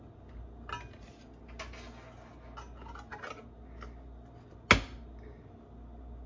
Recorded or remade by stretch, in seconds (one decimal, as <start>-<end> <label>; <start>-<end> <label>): 0.0-6.3 recorded